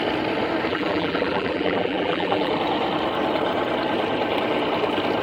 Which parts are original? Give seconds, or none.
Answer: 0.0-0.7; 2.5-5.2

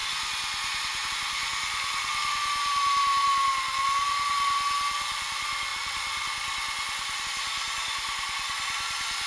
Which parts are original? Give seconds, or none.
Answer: 0.0-9.3

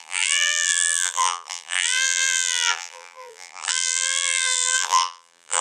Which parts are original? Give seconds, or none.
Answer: none

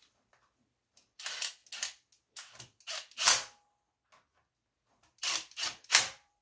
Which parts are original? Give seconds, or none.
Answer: 1.6-5.2

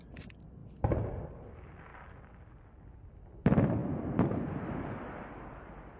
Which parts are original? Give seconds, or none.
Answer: 1.9-2.8

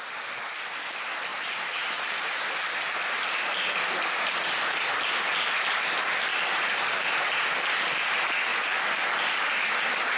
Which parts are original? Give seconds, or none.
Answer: 0.0-1.3; 2.4-6.3; 7.2-8.5; 9.2-10.2

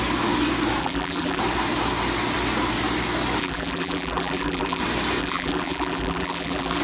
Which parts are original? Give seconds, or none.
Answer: 0.0-0.8; 1.4-3.4; 4.8-5.2